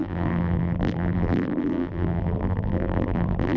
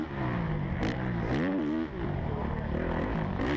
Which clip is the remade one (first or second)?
first